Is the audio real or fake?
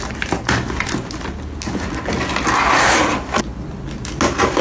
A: real